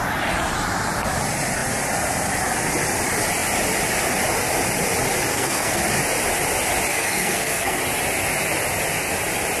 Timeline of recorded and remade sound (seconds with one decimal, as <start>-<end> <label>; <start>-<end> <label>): 0.0-5.3 recorded; 5.3-5.8 remade; 5.8-6.9 recorded; 6.9-7.8 remade; 7.8-9.6 recorded